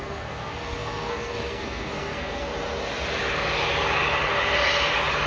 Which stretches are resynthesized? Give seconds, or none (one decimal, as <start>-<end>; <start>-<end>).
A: 0.0-2.5